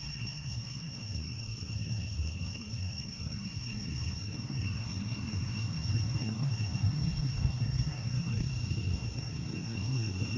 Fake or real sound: fake